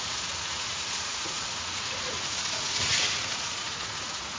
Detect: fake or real fake